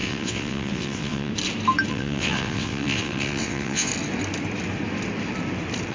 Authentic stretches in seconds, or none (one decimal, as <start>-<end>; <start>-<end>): 1.3-1.9; 3.9-5.9

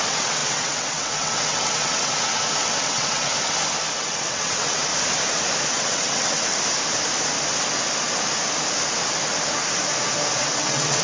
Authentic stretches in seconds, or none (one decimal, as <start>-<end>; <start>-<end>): 3.3-4.0; 4.9-5.7; 6.5-10.4

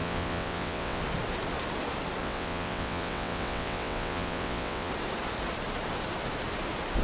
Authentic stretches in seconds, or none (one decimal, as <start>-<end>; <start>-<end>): 1.0-2.2; 4.9-7.0

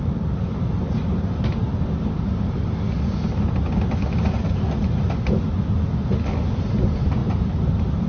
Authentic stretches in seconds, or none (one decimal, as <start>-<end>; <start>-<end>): 0.0-8.1

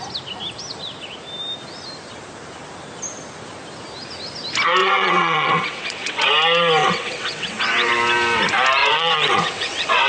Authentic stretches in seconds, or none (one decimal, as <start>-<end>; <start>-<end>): 0.0-4.8; 6.3-6.8; 7.9-8.8

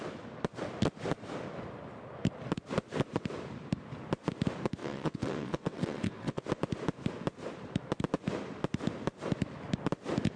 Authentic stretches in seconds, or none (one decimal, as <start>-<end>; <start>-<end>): 0.0-4.8; 6.4-10.4

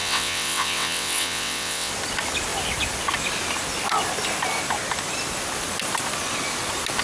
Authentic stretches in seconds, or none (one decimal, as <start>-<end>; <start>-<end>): 1.9-7.0

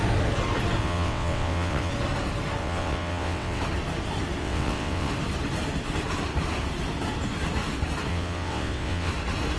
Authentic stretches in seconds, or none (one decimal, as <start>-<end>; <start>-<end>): 0.0-0.8; 1.9-2.6; 3.6-4.4; 5.1-8.1; 9.1-9.6